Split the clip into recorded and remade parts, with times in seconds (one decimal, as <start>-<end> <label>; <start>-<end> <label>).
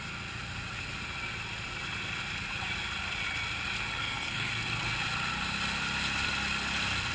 0.0-4.0 recorded; 4.0-4.5 remade; 4.5-7.1 recorded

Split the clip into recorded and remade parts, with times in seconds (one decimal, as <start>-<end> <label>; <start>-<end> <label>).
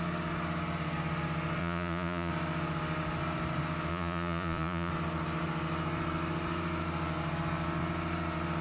0.0-1.6 recorded; 1.6-2.3 remade; 2.3-3.9 recorded; 3.9-4.9 remade; 4.9-8.6 recorded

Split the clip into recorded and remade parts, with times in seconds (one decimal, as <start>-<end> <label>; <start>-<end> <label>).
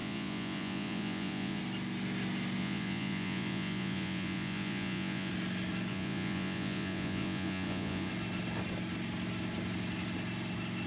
0.0-1.6 remade; 1.6-2.6 recorded; 2.6-5.3 remade; 5.3-5.9 recorded; 5.9-8.1 remade; 8.1-10.9 recorded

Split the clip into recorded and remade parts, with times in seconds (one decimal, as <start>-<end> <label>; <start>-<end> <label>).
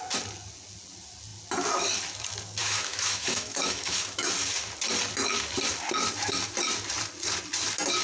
0.0-2.6 recorded; 2.6-4.3 remade; 4.3-8.0 recorded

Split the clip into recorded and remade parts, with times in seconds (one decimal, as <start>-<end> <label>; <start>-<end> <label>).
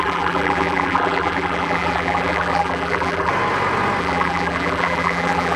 0.0-3.3 remade; 3.3-4.0 recorded; 4.0-5.6 remade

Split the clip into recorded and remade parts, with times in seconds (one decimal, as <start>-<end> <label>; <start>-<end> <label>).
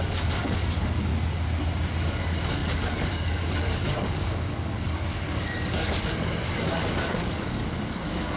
0.0-1.1 remade; 1.1-2.0 recorded; 2.0-8.4 remade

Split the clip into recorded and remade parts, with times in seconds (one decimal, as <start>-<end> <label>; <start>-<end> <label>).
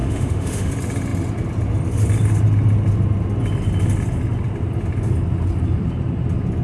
0.0-0.7 remade; 0.7-6.6 recorded